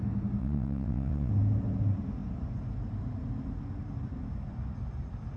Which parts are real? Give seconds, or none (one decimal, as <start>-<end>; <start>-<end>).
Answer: 0.0-0.4; 1.3-5.4